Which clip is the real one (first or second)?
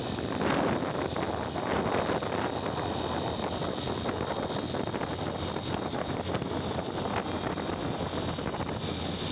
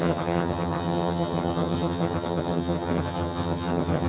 first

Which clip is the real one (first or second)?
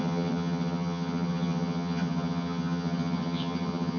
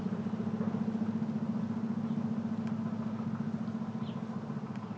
second